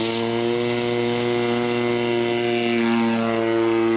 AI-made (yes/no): no